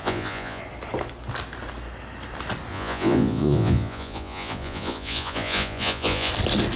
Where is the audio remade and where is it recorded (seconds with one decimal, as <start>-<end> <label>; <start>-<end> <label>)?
0.0-0.6 remade; 0.6-2.7 recorded; 2.7-6.3 remade; 6.3-6.8 recorded